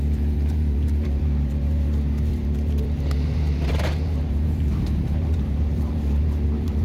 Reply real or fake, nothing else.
fake